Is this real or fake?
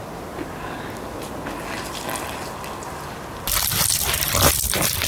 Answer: real